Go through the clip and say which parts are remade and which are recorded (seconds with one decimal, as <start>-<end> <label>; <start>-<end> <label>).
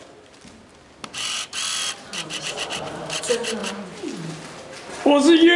0.0-5.6 recorded